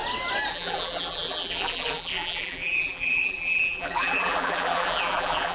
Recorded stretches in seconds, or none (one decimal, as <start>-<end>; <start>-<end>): 0.0-0.5

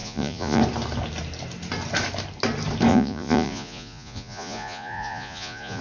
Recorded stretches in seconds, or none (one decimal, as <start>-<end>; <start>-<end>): 0.6-2.9

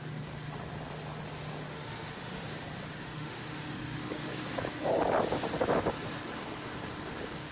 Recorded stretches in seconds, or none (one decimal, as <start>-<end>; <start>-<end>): 0.0-1.7; 2.4-3.0; 4.3-7.5

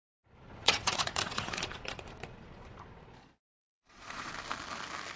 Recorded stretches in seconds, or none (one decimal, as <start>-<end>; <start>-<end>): 0.0-0.6; 2.8-3.6; 4.3-5.2

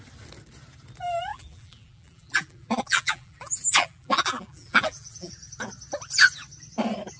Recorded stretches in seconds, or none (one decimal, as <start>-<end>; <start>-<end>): 0.0-1.3; 5.3-7.2

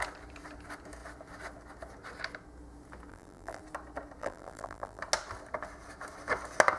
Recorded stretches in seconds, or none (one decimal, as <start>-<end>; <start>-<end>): 0.0-3.1; 3.6-4.2; 5.0-6.8